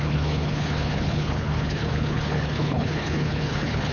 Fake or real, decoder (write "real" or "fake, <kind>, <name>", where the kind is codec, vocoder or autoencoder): fake, codec, HILCodec